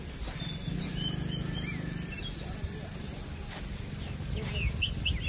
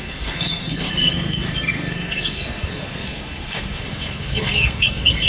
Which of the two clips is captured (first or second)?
first